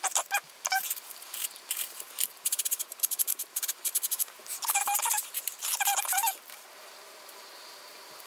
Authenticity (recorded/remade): remade